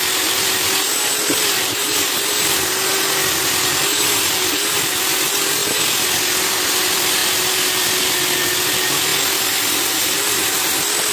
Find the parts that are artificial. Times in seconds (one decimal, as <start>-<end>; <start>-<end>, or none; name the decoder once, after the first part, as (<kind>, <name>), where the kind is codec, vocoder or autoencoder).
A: 0.0-2.9 (vocoder, BigVGAN v2); 3.5-5.6; 6.5-9.1; 9.9-11.1

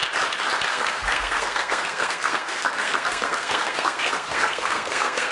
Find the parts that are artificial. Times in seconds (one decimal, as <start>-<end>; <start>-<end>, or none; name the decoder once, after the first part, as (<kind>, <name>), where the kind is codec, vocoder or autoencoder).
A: 0.7-5.3 (codec, SNAC)

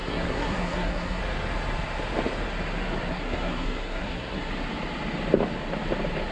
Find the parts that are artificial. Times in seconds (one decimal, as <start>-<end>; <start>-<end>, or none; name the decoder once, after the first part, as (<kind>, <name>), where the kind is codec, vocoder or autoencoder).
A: 0.0-1.2 (codec, SNAC); 3.1-4.5

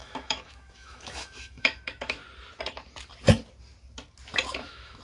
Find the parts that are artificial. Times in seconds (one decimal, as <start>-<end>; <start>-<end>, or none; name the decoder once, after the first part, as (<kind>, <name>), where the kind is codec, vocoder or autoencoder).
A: 0.0-2.2 (autoencoder, DAC-VAE); 4.6-5.0

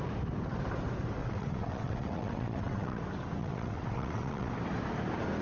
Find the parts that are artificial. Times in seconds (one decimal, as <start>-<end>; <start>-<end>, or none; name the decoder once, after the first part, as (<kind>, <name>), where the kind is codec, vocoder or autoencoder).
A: 1.2-3.0 (vocoder, WaveNeXt); 3.4-4.5